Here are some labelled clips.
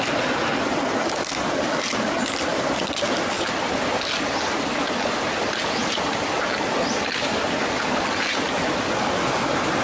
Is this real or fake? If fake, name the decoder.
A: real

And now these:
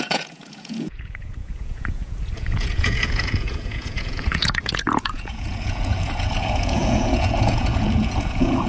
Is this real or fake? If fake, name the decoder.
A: fake, vocoder, Vocos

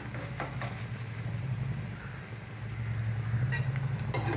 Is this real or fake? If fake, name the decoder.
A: real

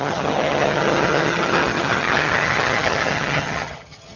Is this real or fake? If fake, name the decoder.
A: fake, vocoder, HiFi-GAN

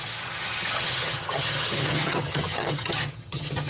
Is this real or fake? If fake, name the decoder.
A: fake, vocoder, HiFi-GAN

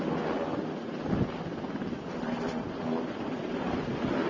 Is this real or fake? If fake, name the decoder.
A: real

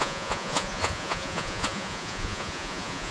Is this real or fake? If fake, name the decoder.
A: fake, vocoder, Vocos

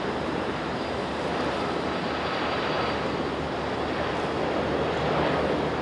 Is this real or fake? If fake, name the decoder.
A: real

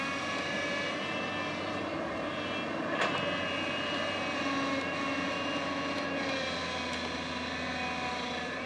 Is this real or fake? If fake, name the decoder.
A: real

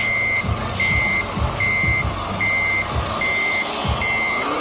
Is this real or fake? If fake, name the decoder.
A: real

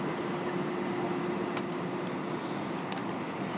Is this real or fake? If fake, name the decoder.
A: real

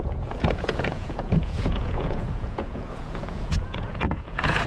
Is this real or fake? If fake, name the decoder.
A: fake, vocoder, Vocos